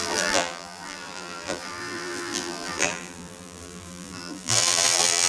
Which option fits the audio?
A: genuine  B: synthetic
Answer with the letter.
B